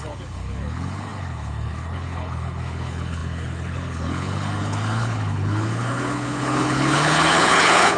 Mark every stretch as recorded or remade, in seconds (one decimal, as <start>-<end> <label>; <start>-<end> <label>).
0.0-8.0 remade